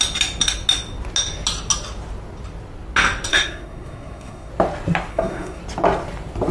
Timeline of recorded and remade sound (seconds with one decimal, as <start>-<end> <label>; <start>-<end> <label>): 0.0-3.3 recorded; 3.3-4.5 remade; 4.5-5.1 recorded; 5.1-5.6 remade; 5.6-6.5 recorded